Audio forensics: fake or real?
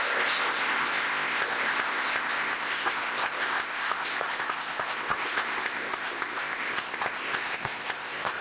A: fake